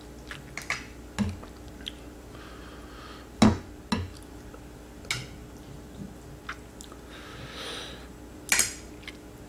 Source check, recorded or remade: recorded